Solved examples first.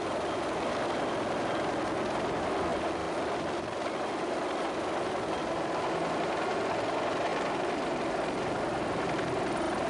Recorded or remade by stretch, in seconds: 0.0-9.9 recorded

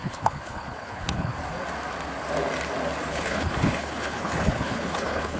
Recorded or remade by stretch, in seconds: 0.0-1.3 remade; 1.3-3.1 recorded; 3.1-5.4 remade